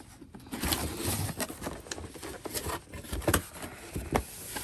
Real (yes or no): yes